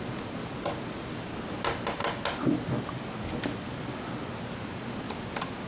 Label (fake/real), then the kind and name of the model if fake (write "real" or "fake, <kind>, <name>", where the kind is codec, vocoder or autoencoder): real